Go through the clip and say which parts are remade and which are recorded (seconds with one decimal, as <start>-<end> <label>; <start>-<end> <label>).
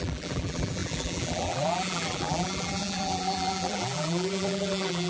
0.0-5.1 remade